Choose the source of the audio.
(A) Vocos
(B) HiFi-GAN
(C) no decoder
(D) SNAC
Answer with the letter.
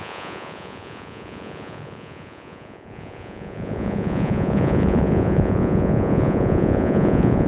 A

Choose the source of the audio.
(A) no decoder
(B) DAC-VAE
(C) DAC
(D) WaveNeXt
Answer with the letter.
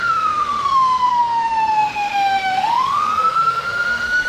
B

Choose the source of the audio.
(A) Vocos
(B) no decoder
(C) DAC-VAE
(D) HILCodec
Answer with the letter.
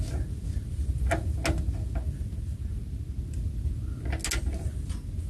B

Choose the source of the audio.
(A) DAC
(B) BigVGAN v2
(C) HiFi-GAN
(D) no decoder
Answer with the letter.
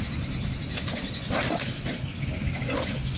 D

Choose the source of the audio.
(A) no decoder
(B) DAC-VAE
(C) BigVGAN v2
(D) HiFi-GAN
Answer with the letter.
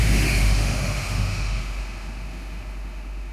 B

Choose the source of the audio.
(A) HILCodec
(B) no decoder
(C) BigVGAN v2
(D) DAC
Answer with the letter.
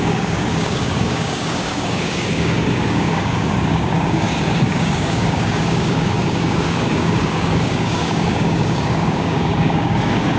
D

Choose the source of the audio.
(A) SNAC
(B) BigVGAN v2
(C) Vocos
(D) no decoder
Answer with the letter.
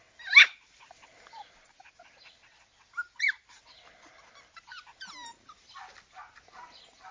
D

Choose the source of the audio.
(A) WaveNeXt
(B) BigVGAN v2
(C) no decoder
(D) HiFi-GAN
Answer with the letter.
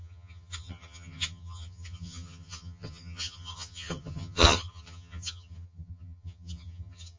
D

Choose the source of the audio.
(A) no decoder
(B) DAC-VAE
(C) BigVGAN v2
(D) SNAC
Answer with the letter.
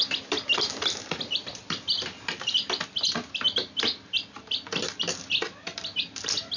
A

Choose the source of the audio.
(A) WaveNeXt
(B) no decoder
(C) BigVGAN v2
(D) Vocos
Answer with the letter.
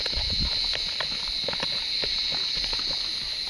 B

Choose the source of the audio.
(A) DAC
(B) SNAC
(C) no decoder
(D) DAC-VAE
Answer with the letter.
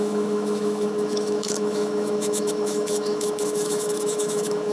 D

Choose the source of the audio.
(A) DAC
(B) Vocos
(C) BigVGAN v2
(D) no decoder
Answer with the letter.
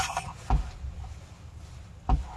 D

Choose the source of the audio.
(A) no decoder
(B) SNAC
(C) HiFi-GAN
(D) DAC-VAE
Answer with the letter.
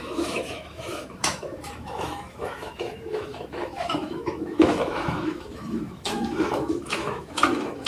D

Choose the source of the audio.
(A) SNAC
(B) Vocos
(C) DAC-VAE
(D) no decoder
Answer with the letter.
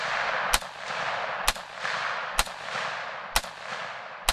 D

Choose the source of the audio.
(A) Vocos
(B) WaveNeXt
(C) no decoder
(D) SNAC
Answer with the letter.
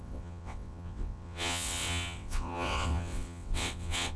B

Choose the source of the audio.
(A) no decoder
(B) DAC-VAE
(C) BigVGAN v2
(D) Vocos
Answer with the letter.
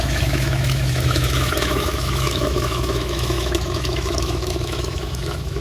B